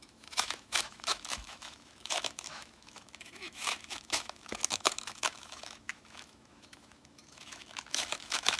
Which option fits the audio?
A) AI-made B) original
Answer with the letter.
A